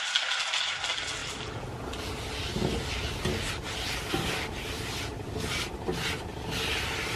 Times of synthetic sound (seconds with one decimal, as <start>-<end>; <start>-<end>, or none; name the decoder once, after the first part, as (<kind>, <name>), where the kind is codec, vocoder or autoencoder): none